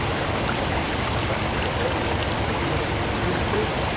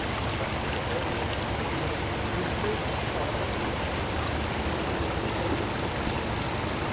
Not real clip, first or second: first